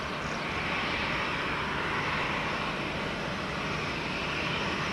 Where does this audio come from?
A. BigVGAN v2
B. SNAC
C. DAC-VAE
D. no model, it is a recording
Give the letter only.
D